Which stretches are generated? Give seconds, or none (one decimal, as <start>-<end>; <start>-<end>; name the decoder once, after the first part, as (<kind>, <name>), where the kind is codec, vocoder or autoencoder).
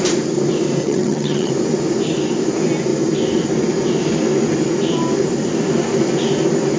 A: 0.8-1.5 (vocoder, HiFi-GAN)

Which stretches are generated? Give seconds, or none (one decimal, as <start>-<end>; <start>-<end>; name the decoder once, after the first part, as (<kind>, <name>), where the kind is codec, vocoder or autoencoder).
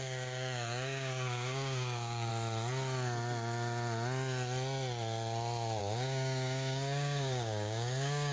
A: 0.0-2.3 (codec, DAC); 5.8-8.3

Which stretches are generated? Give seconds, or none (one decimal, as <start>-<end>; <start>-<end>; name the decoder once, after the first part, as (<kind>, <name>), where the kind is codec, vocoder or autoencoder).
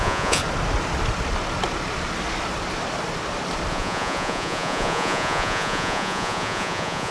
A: 0.0-0.4 (vocoder, Vocos); 3.7-7.1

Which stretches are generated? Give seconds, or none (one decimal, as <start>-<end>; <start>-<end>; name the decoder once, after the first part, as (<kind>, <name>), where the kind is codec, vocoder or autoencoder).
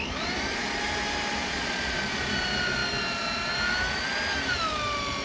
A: 1.4-2.0 (vocoder, Vocos)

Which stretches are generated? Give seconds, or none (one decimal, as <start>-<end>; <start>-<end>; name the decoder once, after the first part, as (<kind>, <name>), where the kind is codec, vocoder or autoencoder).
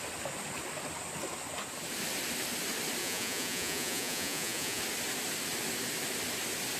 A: 3.0-4.8 (vocoder, Vocos)